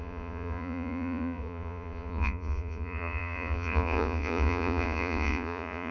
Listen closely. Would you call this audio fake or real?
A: fake